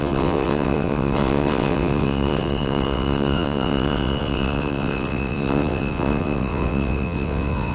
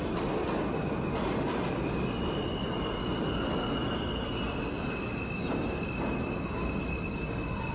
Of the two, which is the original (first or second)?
second